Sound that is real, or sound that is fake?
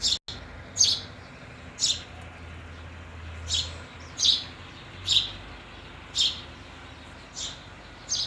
real